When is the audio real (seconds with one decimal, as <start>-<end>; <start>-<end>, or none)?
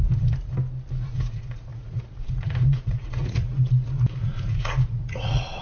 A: 0.5-1.0; 3.5-4.2